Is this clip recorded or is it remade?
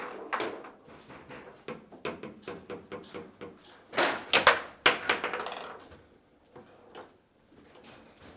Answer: recorded